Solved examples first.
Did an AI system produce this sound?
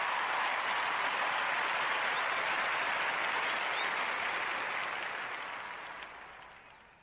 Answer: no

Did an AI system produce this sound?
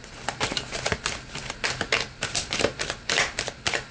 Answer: no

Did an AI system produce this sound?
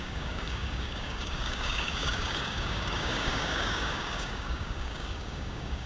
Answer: yes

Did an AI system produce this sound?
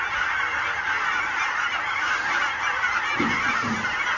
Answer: no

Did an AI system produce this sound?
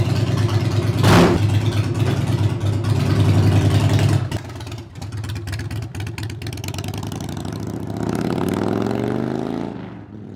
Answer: no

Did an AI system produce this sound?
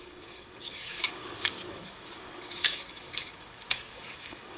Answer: yes